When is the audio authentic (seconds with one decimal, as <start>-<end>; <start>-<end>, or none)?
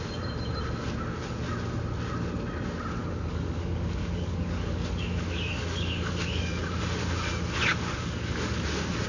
0.0-3.0; 6.6-7.7; 8.6-9.1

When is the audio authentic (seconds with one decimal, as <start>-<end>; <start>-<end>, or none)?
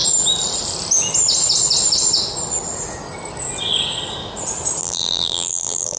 0.0-4.8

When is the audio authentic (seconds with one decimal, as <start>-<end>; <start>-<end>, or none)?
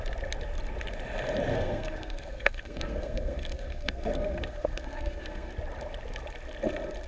0.0-1.5; 5.5-7.1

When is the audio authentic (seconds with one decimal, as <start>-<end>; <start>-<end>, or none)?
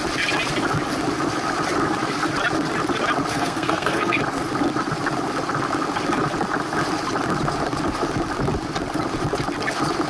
0.0-3.3; 4.2-10.1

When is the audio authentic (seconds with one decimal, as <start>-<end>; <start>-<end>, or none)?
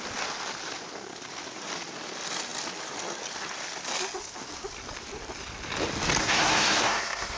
0.0-6.2